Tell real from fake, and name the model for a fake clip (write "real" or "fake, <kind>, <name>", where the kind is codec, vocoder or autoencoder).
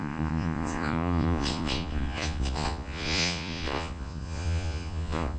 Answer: fake, vocoder, Vocos